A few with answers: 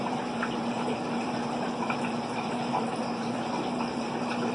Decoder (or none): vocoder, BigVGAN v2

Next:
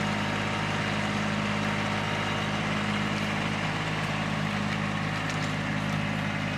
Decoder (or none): none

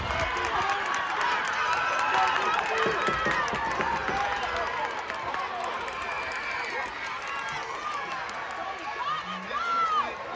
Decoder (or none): none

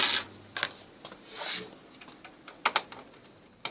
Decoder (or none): none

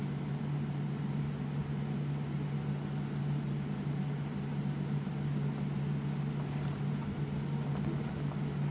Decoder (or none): none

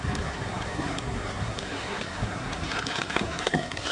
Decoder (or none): codec, SNAC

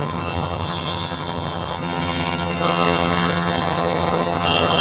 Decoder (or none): vocoder, HiFi-GAN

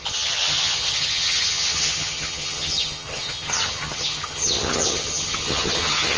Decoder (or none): vocoder, HiFi-GAN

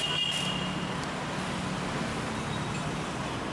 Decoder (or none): none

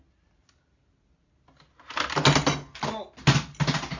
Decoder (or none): none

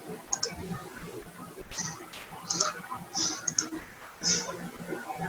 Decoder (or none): none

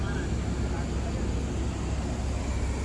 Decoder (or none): none